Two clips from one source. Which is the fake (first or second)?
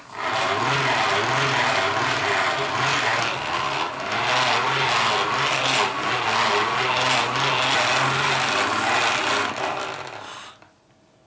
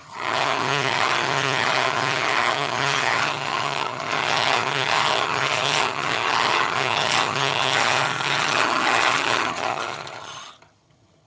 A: second